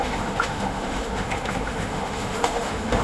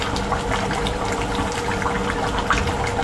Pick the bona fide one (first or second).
second